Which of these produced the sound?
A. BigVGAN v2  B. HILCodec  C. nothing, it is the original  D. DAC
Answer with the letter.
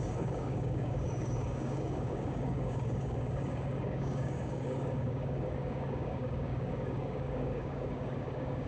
D